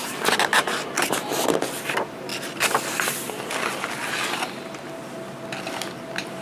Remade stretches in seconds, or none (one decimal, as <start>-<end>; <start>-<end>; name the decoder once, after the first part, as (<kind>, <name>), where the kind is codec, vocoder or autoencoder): none